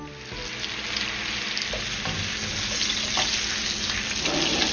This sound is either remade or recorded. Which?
recorded